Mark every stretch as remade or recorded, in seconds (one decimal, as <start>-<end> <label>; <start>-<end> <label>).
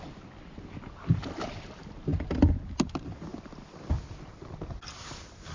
0.0-5.5 recorded